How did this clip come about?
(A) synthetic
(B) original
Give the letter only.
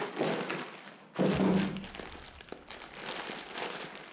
B